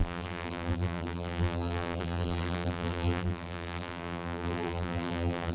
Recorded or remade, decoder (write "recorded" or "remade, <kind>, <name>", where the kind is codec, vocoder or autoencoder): remade, vocoder, BigVGAN v2